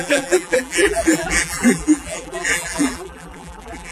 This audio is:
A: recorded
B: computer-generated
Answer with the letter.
B